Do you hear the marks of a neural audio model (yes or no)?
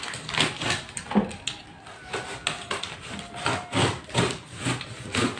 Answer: no